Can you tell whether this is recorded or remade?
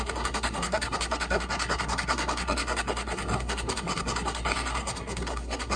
remade